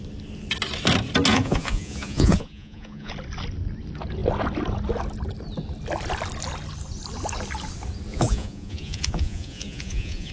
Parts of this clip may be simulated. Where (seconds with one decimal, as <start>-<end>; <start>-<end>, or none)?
1.3-3.1; 8.1-10.3